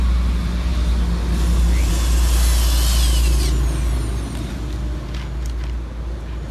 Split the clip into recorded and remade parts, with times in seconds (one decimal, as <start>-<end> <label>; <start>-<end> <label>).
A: 0.0-6.5 recorded